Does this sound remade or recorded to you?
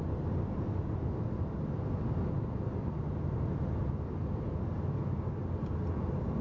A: recorded